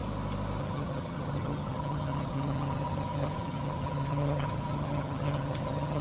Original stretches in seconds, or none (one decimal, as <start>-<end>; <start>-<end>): 0.0-0.6